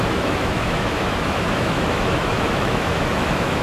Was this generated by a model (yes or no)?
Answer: yes